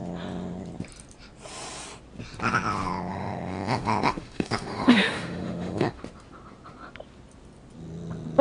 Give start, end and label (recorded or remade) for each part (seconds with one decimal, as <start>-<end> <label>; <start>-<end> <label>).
0.0-3.1 recorded; 3.1-6.0 remade; 6.0-8.4 recorded